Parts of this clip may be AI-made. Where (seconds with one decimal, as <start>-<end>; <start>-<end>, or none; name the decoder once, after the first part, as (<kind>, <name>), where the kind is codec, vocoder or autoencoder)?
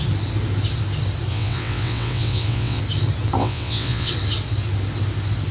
1.3-2.8 (vocoder, WaveNeXt); 3.4-4.1